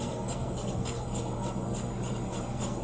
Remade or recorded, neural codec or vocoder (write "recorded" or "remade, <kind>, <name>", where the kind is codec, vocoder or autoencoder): remade, codec, SNAC